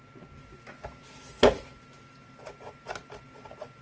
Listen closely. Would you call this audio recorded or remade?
recorded